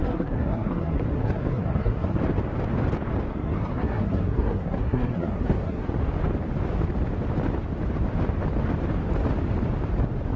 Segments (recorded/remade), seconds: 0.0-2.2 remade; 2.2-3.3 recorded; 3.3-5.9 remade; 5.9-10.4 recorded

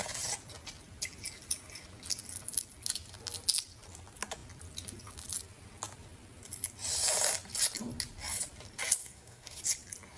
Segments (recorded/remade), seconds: 0.0-9.0 recorded; 9.0-9.6 remade; 9.6-10.2 recorded

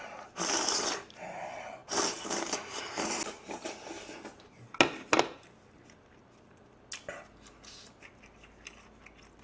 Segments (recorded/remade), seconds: 0.0-9.4 recorded

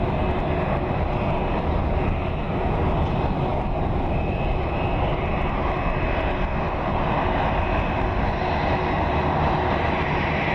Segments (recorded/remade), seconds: 0.0-10.5 recorded

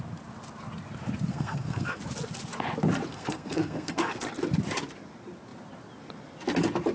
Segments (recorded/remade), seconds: 0.0-1.3 recorded; 1.3-2.0 remade; 2.0-3.1 recorded; 3.1-4.2 remade; 4.2-6.9 recorded